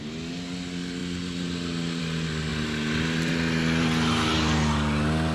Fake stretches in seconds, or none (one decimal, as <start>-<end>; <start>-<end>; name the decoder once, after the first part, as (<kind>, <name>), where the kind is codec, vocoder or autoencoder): none